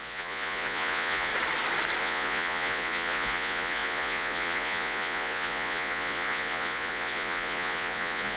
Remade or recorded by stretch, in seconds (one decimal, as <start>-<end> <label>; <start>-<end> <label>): 0.0-1.3 remade; 1.3-2.0 recorded; 2.0-8.4 remade